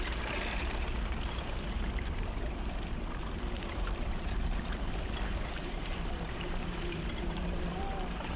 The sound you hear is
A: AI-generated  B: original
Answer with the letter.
A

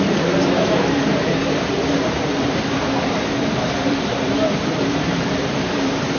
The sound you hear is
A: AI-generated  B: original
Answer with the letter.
A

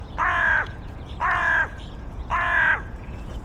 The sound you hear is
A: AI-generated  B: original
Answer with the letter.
A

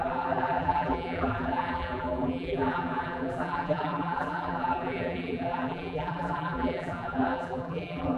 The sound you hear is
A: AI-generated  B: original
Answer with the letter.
A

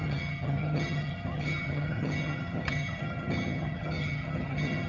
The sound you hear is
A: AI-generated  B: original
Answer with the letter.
A